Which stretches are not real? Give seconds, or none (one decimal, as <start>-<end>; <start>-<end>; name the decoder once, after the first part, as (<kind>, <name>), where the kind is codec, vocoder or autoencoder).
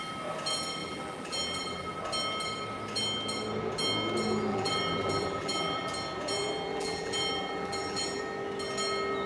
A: 0.8-2.0 (vocoder, BigVGAN v2); 4.5-5.9; 6.7-8.2